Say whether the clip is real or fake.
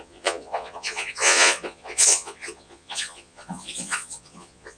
fake